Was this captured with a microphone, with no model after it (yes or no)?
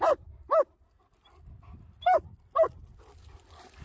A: yes